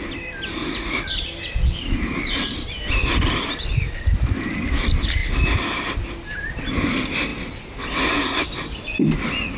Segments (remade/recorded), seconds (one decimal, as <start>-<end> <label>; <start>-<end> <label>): 0.0-0.6 recorded; 0.6-1.1 remade; 1.1-9.6 recorded

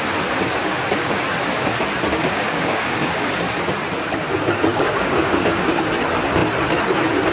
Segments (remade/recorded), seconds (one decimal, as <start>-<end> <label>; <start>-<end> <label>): 0.0-0.6 recorded; 0.6-1.2 remade; 1.2-2.1 recorded; 2.1-3.4 remade; 3.4-4.7 recorded; 4.7-5.9 remade; 5.9-7.3 recorded